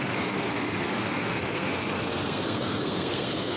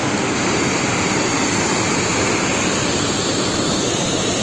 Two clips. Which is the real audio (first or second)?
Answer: second